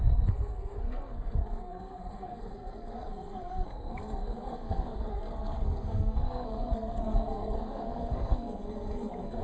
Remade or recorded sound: remade